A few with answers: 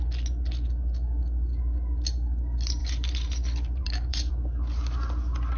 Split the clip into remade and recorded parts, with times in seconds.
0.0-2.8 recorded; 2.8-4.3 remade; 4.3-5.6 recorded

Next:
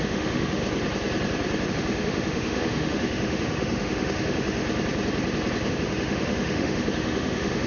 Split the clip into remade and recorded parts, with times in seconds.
0.0-0.6 remade; 0.6-1.7 recorded; 1.7-4.6 remade; 4.6-5.7 recorded; 5.7-7.7 remade

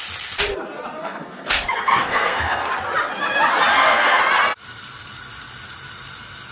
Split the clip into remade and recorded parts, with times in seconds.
0.0-1.0 recorded; 1.0-2.7 remade; 2.7-3.7 recorded; 3.7-4.2 remade; 4.2-6.5 recorded